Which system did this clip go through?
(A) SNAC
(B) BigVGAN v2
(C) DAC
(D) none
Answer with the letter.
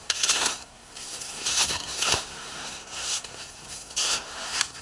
A